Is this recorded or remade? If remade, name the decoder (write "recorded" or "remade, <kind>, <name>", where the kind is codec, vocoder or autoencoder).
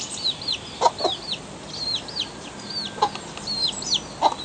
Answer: recorded